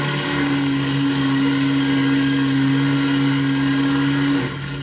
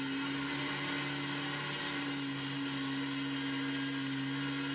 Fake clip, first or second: first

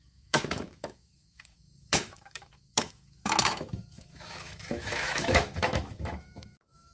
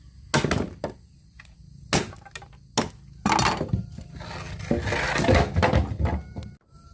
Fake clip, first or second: first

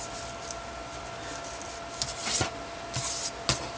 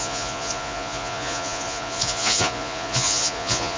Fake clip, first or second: second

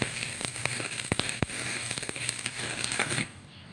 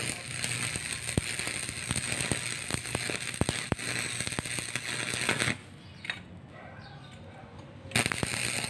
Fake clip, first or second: first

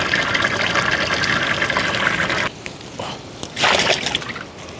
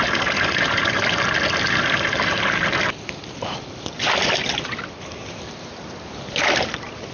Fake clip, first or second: second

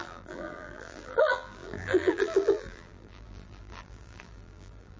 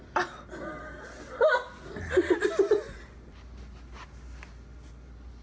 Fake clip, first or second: first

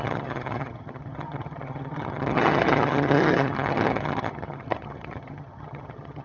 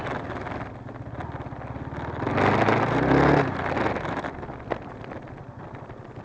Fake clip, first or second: first